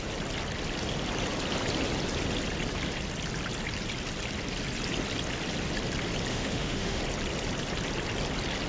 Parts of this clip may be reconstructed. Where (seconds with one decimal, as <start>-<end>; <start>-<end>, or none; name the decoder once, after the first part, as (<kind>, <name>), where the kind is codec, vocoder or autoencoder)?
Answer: 6.3-7.0 (autoencoder, DAC-VAE)